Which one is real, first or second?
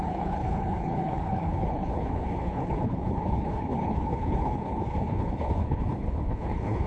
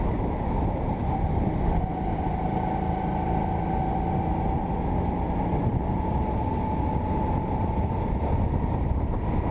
second